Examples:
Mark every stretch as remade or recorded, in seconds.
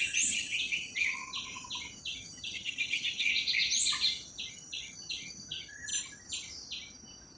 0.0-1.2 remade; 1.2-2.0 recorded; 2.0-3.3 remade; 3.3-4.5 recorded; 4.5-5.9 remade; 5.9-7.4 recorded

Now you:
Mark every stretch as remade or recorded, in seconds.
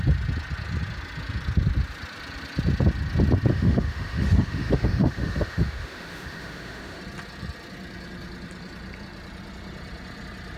0.0-3.5 recorded; 3.5-7.0 remade; 7.0-10.6 recorded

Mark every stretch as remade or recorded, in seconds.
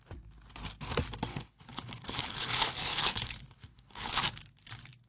0.0-1.3 recorded; 1.3-4.1 remade; 4.1-5.1 recorded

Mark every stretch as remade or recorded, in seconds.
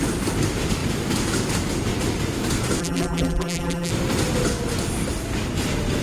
0.0-2.8 recorded; 2.8-3.9 remade; 3.9-6.0 recorded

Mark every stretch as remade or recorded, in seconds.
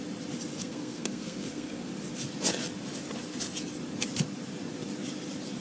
0.0-0.5 recorded; 0.5-1.9 remade; 1.9-5.6 recorded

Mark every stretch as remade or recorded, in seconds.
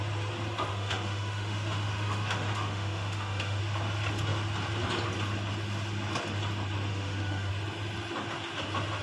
0.0-0.7 recorded; 0.7-3.6 remade; 3.6-6.9 recorded; 6.9-7.5 remade; 7.5-9.0 recorded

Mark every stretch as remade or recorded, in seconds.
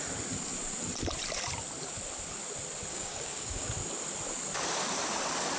0.0-2.9 recorded; 2.9-3.7 remade; 3.7-5.6 recorded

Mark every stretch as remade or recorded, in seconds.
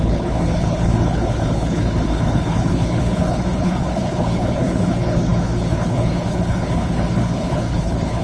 0.0-8.2 remade